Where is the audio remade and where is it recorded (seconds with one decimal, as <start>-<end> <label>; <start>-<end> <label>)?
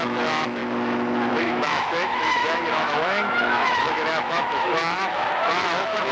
0.0-0.6 remade; 0.6-1.3 recorded; 1.3-6.1 remade